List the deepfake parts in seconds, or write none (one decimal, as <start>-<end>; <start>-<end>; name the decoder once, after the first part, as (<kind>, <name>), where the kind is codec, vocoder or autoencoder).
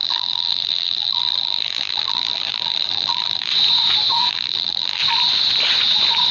0.0-3.5 (vocoder, BigVGAN v2); 4.3-5.0